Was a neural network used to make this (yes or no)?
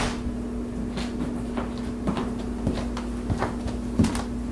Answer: no